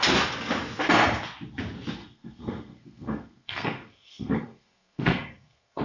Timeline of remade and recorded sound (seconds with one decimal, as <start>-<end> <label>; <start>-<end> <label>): 0.0-2.0 recorded; 2.0-5.8 remade